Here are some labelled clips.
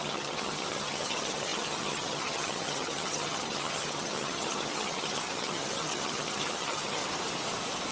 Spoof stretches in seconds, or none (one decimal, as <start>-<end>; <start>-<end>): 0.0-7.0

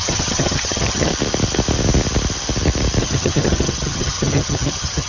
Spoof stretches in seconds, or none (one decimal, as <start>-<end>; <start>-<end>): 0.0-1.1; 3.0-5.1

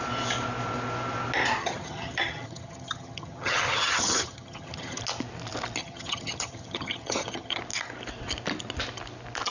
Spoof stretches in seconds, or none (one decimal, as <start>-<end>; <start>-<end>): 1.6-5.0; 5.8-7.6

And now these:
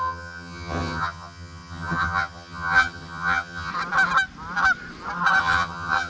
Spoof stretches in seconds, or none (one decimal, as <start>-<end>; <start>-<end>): 0.0-3.7; 5.4-6.1

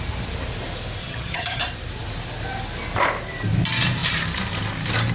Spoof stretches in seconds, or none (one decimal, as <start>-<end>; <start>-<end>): 1.0-1.6